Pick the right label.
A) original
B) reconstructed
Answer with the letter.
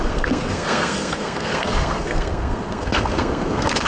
B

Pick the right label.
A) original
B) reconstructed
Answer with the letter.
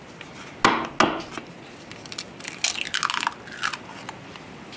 A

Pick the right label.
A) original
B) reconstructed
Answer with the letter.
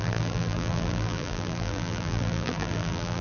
B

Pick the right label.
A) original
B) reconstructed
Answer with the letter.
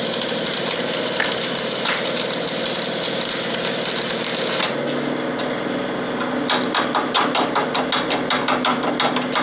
A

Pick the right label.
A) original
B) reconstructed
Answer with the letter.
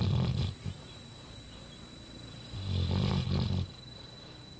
A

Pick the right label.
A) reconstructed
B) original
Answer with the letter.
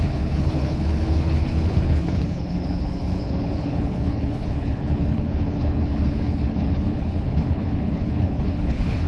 A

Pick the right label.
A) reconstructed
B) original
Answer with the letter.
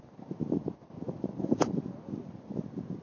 B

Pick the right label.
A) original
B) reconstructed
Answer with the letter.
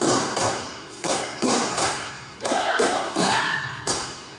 B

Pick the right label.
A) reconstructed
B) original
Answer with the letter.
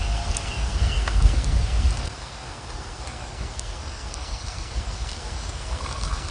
A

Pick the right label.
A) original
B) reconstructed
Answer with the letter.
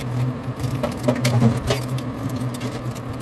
B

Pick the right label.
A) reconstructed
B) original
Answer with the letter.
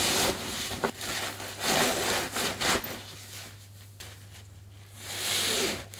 B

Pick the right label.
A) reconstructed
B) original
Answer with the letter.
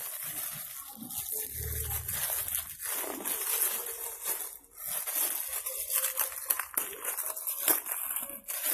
B